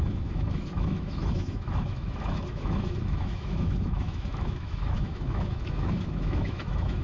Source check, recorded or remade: remade